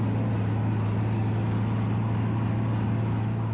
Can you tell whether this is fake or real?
real